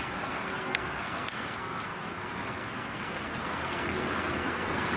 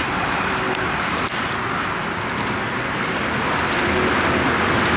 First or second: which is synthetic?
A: first